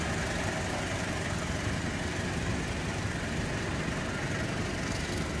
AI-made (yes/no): no